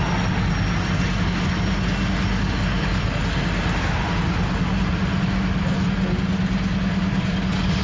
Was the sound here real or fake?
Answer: real